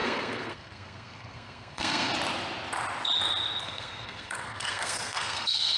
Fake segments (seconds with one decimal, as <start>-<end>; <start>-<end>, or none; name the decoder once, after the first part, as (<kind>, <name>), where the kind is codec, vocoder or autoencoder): 0.0-2.1 (codec, SNAC); 3.6-5.8